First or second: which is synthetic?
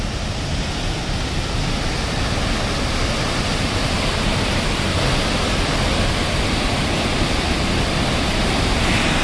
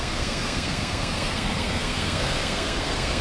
second